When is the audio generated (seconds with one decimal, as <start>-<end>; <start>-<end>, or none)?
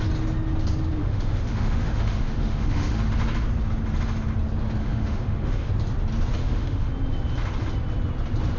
1.0-3.1; 4.8-5.7; 6.4-6.9